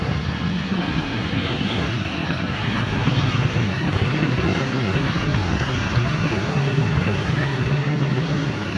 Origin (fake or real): fake